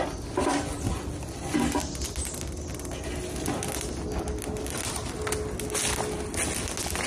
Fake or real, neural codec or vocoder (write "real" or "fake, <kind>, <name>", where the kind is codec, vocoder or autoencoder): real